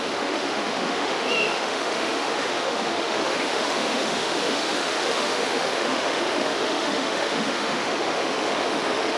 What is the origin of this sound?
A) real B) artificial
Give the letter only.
B